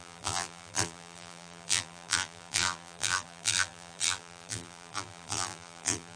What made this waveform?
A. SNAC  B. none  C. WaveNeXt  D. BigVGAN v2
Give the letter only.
D